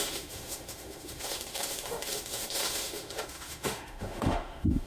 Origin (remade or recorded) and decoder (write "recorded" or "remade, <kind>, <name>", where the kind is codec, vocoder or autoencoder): remade, autoencoder, DAC-VAE